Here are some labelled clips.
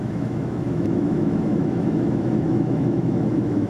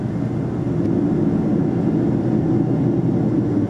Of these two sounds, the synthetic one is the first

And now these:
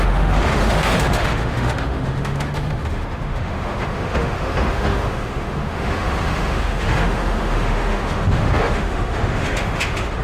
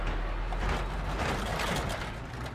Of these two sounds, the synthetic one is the first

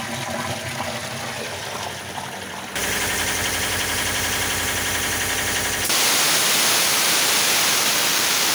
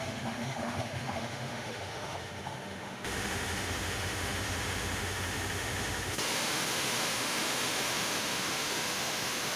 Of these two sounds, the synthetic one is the second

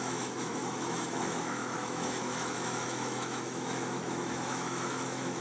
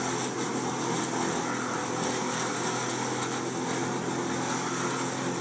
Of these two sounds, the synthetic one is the first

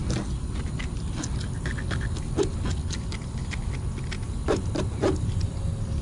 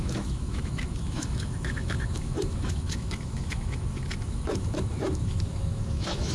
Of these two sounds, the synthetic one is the second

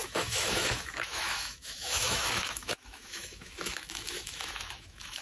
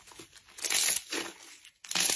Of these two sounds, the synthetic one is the first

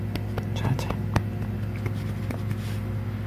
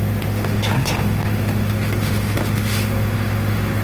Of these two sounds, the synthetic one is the second